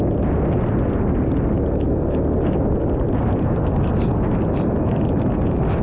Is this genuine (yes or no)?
yes